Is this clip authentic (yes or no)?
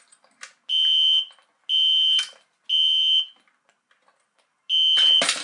yes